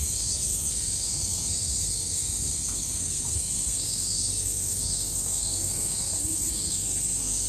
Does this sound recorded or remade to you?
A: remade